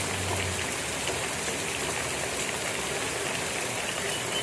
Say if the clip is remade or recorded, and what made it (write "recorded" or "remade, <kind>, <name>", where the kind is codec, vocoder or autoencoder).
recorded